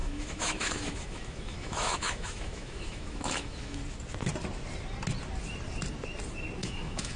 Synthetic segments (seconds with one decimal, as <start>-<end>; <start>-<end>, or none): 0.0-3.8; 6.6-7.2